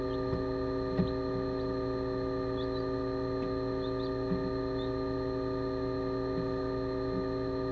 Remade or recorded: recorded